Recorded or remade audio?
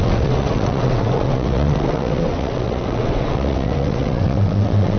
remade